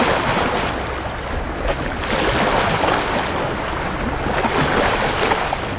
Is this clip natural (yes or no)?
yes